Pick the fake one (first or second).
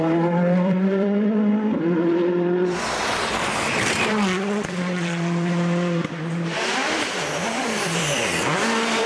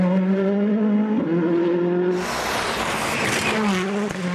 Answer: first